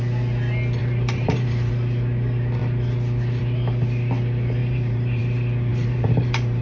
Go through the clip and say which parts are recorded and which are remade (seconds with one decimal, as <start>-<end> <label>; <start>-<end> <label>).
0.0-0.8 recorded; 0.8-1.7 remade; 1.7-4.6 recorded; 4.6-5.2 remade; 5.2-5.7 recorded; 5.7-6.6 remade